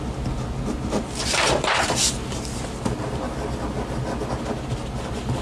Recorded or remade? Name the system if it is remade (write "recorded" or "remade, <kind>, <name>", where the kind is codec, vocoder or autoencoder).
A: recorded